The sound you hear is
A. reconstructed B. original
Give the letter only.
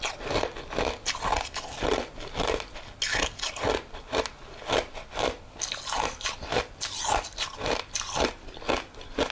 B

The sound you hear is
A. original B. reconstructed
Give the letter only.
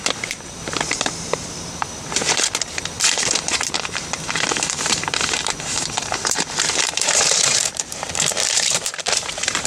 B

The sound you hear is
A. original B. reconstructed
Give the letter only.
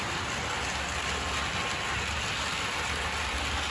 A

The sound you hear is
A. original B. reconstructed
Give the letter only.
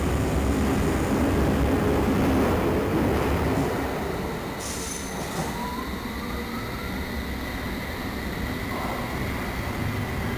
A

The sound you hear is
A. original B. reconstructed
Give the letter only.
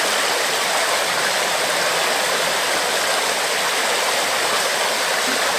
A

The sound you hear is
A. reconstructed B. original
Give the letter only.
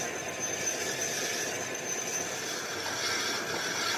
B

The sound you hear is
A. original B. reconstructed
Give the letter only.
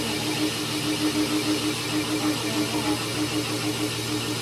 A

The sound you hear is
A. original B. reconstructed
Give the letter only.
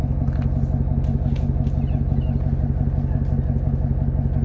A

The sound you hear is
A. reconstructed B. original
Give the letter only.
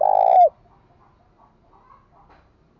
B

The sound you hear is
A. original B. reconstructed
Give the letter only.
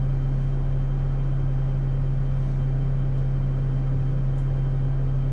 A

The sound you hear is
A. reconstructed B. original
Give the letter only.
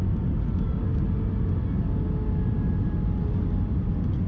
B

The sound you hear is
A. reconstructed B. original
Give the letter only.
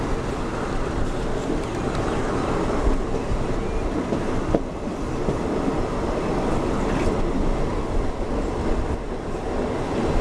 B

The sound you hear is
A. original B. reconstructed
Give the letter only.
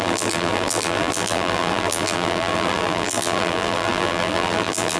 B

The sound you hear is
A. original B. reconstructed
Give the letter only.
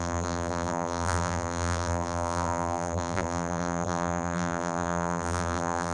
B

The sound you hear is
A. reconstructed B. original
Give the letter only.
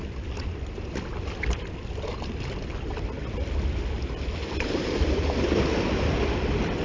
B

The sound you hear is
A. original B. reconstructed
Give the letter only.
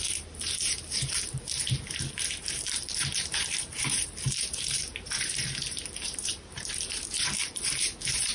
B